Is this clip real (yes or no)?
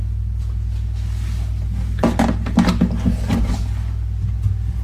yes